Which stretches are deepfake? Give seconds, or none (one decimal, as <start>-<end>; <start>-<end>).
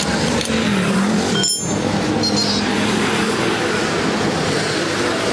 0.6-1.3; 2.7-3.8